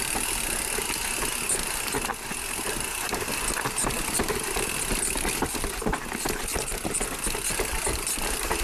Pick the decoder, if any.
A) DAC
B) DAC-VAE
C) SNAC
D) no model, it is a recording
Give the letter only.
D